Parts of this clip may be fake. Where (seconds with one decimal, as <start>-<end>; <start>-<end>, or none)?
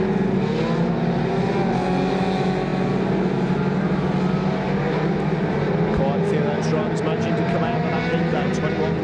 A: none